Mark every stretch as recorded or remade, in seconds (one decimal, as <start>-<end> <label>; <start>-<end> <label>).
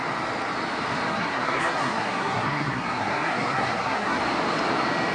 0.0-1.1 recorded; 1.1-4.2 remade; 4.2-5.1 recorded